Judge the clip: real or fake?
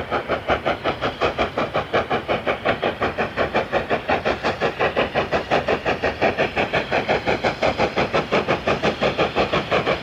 fake